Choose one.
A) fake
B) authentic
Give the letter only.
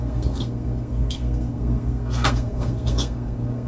A